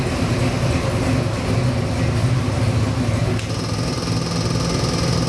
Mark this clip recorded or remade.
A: recorded